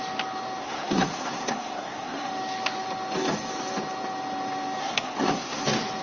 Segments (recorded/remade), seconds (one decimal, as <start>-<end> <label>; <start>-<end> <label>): 0.0-0.6 recorded; 0.6-2.3 remade; 2.3-4.8 recorded; 4.8-5.6 remade; 5.6-6.0 recorded

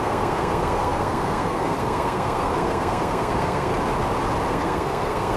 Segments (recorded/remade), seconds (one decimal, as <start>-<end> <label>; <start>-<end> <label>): 0.0-3.7 remade; 3.7-4.5 recorded; 4.5-5.4 remade

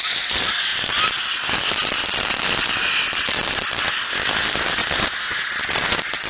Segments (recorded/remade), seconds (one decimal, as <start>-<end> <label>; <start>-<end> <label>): 0.0-6.3 recorded

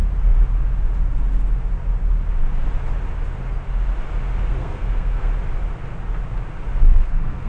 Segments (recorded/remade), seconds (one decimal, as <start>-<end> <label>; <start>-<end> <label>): 0.0-4.5 recorded; 4.5-5.3 remade; 5.3-6.9 recorded; 6.9-7.5 remade